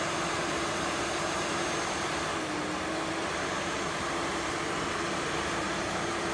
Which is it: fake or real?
real